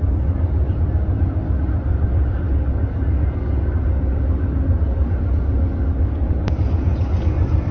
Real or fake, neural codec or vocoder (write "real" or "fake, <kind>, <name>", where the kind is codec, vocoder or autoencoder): real